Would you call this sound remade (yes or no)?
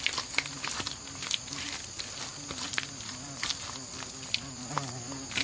no